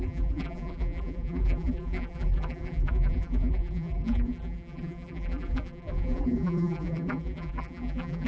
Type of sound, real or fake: fake